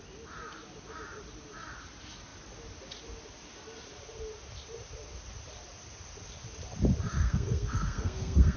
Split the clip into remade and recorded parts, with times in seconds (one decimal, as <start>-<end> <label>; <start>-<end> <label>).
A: 0.0-7.1 recorded; 7.1-8.6 remade